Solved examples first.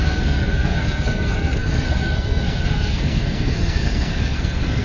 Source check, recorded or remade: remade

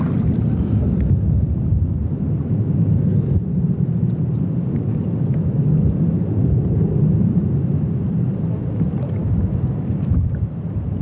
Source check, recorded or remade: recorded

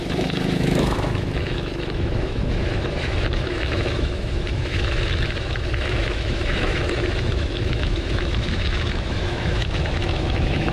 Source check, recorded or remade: remade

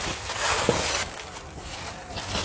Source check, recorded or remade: recorded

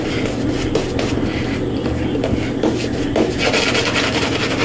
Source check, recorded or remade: recorded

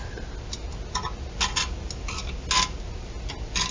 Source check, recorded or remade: recorded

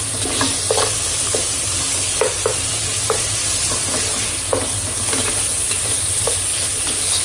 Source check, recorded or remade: recorded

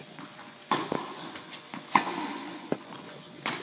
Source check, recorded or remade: remade